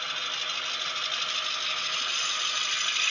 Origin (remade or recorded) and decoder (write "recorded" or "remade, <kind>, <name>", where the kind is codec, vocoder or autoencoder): recorded